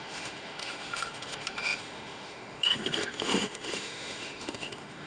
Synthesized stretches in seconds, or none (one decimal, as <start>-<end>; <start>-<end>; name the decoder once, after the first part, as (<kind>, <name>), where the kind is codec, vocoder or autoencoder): 0.0-5.1 (autoencoder, DAC-VAE)